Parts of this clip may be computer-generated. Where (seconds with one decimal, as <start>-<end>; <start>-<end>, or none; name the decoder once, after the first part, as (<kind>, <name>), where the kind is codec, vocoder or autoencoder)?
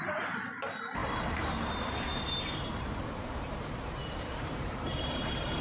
0.0-5.6 (vocoder, BigVGAN v2)